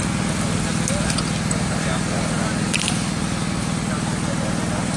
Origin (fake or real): real